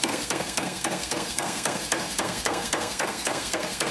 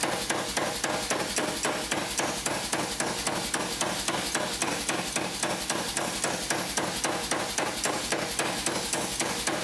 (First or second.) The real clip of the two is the second